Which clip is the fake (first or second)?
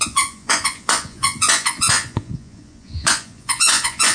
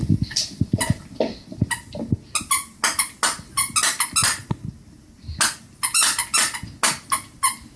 first